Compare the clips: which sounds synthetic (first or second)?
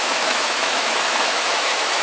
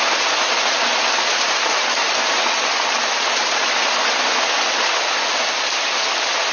first